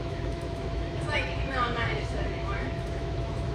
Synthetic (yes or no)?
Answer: yes